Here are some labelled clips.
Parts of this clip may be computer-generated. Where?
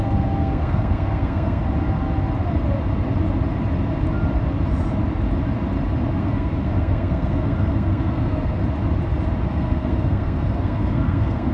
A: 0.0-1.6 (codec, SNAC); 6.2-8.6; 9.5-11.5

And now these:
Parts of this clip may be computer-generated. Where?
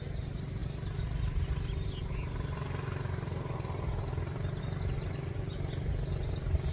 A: none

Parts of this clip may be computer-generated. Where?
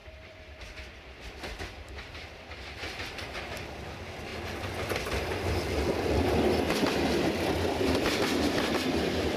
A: 0.0-4.3 (vocoder, BigVGAN v2); 7.8-9.4